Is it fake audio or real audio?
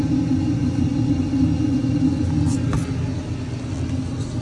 real